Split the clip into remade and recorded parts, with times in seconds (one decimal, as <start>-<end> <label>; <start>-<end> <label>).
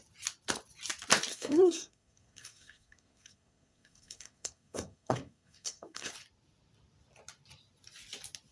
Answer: 0.0-1.3 recorded; 1.3-6.1 remade; 6.1-8.5 recorded